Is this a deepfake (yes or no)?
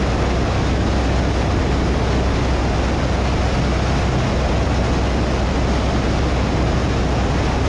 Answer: no